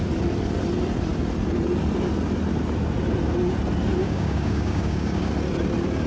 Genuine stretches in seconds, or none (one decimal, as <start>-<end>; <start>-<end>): 0.0-4.0; 5.3-6.1